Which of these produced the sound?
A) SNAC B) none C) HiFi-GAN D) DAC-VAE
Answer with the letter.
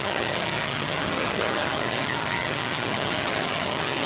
C